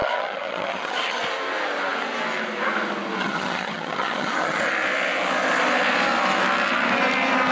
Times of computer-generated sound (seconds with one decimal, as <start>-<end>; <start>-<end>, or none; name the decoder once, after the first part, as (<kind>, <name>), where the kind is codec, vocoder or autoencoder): 0.0-1.2 (vocoder, HiFi-GAN); 3.2-4.7